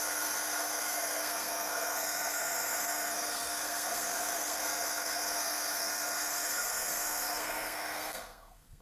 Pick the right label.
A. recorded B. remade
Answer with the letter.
B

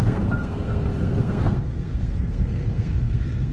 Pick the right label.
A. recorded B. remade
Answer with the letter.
B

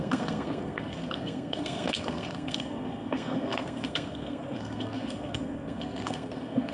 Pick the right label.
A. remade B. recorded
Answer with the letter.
A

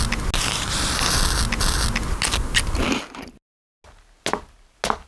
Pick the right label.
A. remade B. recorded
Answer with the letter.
B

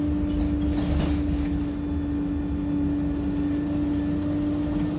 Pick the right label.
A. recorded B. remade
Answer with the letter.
A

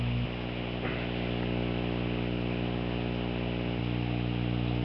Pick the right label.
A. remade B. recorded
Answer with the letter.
B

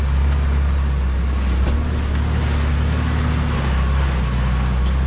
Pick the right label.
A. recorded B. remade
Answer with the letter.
A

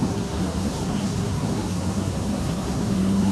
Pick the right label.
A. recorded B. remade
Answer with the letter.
B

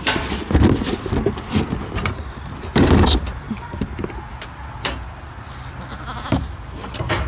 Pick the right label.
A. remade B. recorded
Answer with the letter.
B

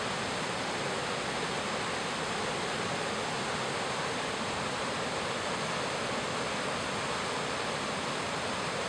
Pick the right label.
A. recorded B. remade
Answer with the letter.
A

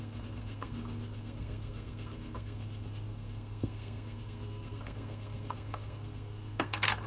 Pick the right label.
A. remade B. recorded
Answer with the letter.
A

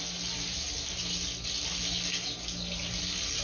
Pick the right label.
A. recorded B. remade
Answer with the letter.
A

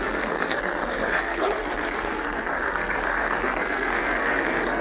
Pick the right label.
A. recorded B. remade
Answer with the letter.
B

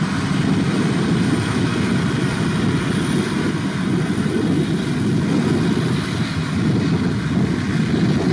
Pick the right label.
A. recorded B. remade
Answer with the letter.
A